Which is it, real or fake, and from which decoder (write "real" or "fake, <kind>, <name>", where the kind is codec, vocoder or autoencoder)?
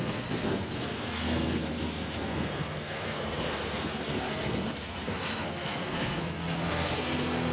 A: fake, codec, SNAC